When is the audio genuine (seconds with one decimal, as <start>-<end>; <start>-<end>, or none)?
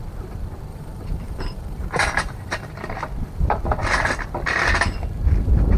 0.0-0.7; 2.7-5.8